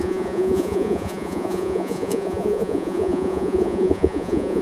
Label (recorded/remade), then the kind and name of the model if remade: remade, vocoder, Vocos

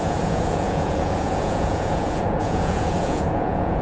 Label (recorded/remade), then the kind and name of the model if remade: remade, vocoder, Vocos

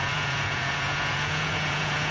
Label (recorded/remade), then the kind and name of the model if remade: remade, vocoder, Vocos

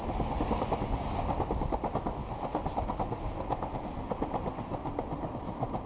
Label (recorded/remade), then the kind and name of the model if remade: recorded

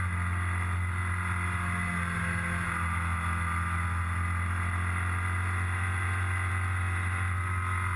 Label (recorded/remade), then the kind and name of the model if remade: recorded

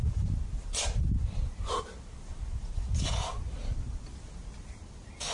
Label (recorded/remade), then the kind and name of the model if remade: recorded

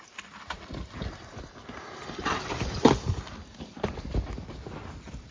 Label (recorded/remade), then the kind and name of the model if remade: recorded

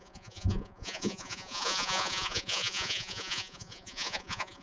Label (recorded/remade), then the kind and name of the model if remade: remade, vocoder, Vocos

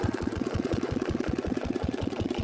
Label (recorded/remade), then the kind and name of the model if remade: remade, vocoder, Vocos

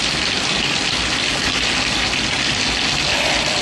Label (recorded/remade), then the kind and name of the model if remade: recorded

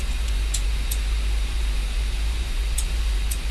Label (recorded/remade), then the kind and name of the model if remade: remade, vocoder, Vocos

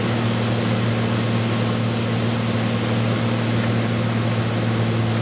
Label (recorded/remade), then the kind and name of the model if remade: recorded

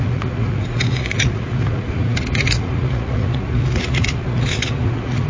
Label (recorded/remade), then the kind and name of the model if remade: remade, vocoder, Vocos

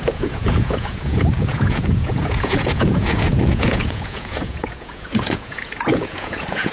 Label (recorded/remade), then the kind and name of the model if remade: remade, vocoder, Vocos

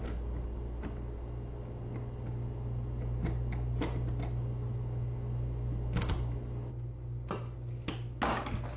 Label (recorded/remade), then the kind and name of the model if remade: recorded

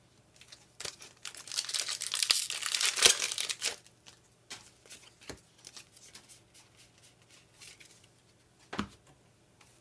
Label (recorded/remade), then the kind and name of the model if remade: recorded